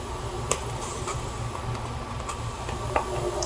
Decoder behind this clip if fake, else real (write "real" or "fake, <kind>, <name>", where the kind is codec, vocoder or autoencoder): real